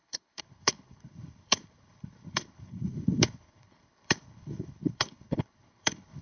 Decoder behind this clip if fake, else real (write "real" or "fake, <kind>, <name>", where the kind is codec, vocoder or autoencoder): fake, codec, HILCodec